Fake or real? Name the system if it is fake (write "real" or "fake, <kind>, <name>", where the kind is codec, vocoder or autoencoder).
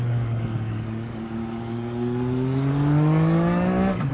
fake, codec, DAC